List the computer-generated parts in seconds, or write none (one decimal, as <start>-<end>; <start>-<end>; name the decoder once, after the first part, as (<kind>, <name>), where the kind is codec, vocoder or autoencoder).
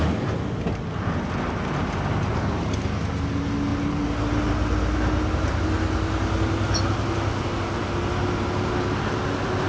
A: none